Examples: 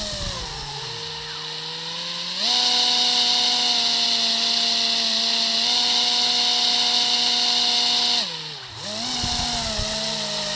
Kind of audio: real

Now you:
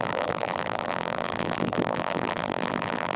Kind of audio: fake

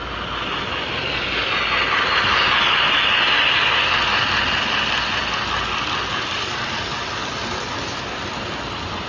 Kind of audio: real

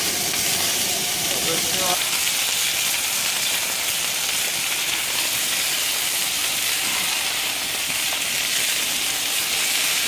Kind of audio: real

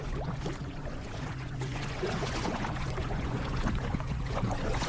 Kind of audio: fake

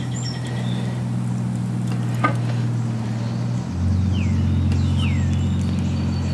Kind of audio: real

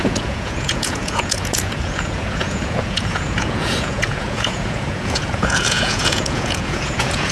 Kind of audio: fake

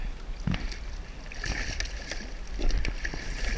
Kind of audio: real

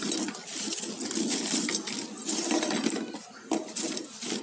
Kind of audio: real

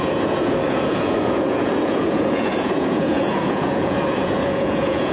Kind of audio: fake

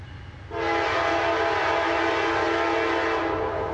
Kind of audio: real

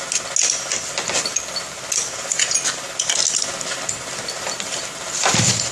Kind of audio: real